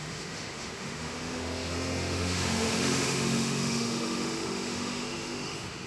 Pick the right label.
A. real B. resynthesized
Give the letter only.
B